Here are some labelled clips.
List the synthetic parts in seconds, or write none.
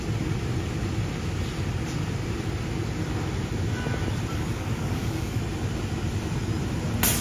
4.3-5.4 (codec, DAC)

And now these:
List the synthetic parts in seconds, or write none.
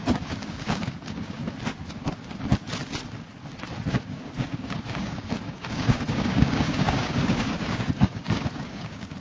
0.0-1.4 (codec, DAC); 3.9-9.2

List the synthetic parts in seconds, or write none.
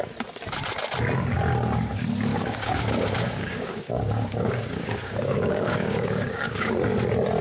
2.3-6.7 (codec, DAC)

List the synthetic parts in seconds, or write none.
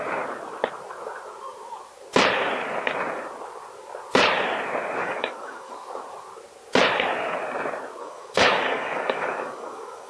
5.0-5.7 (codec, DAC); 8.0-10.1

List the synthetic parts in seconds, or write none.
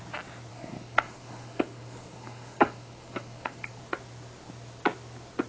0.5-3.8 (codec, DAC)